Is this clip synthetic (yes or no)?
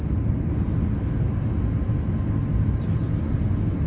no